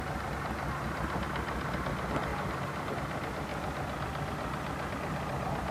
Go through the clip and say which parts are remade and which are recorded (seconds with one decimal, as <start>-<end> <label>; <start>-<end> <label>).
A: 0.0-2.3 recorded; 2.3-2.9 remade; 2.9-5.7 recorded